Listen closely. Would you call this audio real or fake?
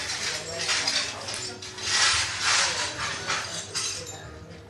real